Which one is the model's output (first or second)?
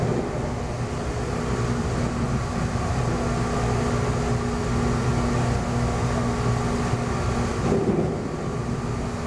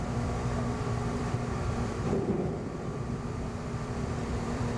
second